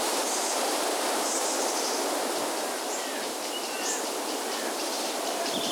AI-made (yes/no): yes